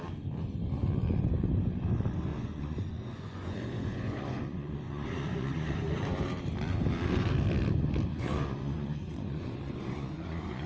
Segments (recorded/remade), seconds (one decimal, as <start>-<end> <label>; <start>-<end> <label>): 0.0-2.3 recorded; 2.3-6.0 remade; 6.0-8.1 recorded; 8.1-10.7 remade